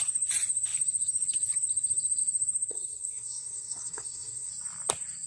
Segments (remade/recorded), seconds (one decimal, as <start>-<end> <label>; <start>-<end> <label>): 0.0-2.7 recorded; 2.7-4.5 remade; 4.5-5.3 recorded